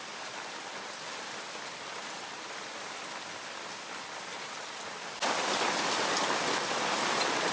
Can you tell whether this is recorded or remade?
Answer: recorded